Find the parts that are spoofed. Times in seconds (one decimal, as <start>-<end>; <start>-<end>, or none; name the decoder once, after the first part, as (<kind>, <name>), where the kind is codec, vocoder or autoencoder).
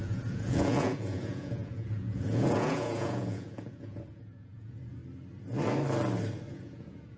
0.0-5.0 (vocoder, Vocos); 6.5-7.2